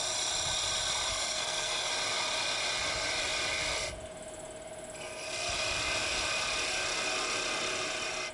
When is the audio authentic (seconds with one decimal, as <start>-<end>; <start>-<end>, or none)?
0.0-1.1; 1.9-8.3